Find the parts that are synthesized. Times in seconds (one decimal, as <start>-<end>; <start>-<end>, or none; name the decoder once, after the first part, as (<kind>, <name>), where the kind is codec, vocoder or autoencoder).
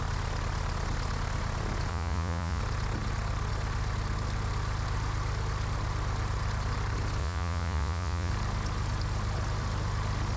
1.9-2.6 (vocoder, Vocos); 7.2-8.3